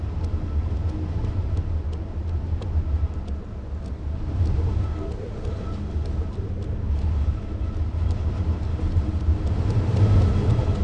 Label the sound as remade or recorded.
recorded